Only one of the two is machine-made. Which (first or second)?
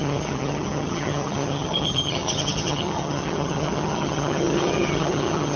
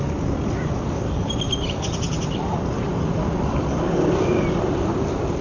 first